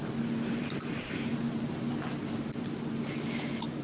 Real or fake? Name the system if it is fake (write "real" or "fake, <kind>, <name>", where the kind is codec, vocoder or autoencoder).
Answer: real